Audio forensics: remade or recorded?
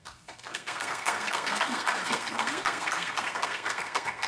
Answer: remade